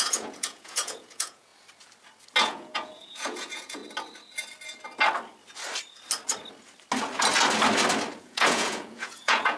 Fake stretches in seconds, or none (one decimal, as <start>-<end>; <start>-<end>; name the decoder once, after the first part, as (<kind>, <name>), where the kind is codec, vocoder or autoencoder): 0.0-1.5 (vocoder, Vocos); 2.4-3.8; 8.2-9.6